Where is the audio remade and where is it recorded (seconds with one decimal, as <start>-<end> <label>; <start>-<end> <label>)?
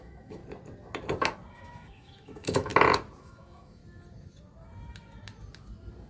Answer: 0.0-0.4 remade; 0.4-1.5 recorded; 1.5-2.7 remade; 2.7-3.2 recorded; 3.2-3.8 remade; 3.8-6.1 recorded